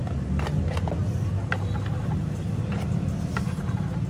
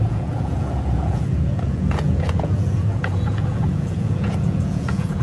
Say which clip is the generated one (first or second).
second